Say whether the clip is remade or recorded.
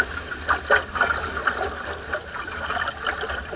recorded